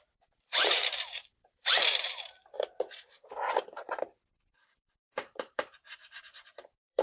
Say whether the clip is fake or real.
fake